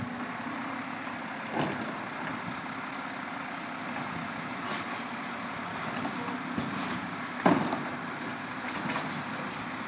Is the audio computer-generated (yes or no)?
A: no